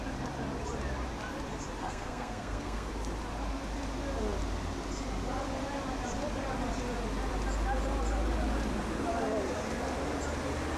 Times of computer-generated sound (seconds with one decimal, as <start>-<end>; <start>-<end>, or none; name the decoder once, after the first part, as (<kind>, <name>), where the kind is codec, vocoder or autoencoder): 1.8-2.9 (codec, SNAC)